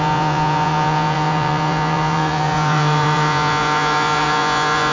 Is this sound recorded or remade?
remade